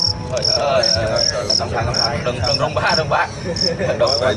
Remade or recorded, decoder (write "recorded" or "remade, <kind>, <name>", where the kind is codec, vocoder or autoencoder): recorded